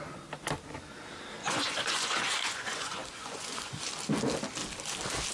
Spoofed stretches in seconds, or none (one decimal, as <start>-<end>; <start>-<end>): 1.4-3.9